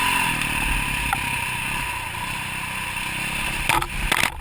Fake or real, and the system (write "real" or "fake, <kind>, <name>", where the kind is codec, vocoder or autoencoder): real